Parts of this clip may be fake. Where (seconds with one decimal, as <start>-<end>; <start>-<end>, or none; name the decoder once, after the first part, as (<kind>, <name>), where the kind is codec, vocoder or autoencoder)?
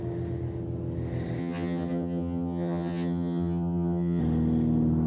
1.4-4.2 (vocoder, HiFi-GAN)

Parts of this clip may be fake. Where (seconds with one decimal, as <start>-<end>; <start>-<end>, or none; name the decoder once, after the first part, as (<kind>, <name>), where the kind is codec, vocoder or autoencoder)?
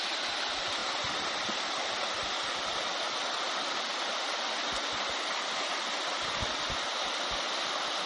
none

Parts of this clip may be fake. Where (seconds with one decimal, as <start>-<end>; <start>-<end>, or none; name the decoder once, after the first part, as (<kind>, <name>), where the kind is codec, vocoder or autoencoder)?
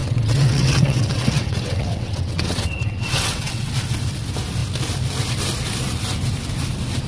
0.0-3.7 (vocoder, WaveNeXt)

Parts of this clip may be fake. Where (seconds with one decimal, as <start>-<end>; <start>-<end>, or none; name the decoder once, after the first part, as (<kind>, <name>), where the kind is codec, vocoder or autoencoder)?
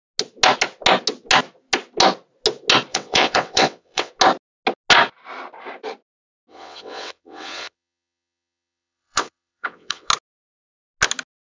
2.9-4.1 (vocoder, WaveNeXt); 6.5-10.1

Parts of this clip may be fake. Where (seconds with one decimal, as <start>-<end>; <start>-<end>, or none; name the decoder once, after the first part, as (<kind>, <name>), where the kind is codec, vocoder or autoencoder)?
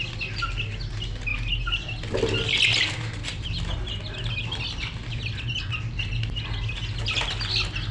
none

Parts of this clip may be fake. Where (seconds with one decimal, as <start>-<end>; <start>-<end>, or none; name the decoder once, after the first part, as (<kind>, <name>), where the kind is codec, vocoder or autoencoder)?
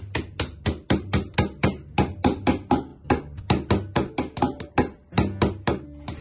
none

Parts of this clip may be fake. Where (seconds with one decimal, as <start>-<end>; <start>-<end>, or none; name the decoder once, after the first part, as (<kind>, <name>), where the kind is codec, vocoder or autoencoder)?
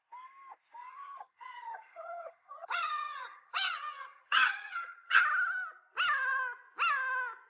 0.8-5.2 (vocoder, HiFi-GAN)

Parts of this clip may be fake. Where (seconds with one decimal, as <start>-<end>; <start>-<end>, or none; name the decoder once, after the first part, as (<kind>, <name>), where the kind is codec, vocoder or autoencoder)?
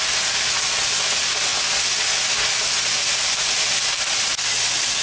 none